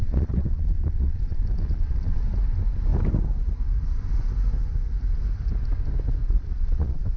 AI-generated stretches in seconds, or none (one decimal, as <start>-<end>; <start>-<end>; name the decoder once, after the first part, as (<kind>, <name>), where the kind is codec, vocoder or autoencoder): 0.0-2.2 (vocoder, Vocos); 6.2-7.2